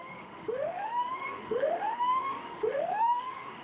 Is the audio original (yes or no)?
no